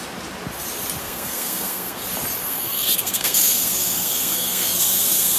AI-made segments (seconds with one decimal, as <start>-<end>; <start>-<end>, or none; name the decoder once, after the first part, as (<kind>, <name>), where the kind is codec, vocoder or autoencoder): 1.0-2.0 (codec, SNAC); 2.4-5.4